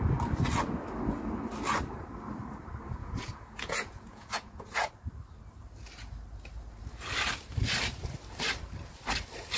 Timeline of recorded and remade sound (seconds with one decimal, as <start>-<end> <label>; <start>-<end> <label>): 0.0-3.0 recorded; 3.0-4.9 remade; 4.9-9.6 recorded